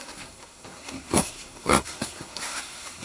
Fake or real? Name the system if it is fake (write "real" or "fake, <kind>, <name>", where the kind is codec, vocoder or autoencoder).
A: fake, codec, SNAC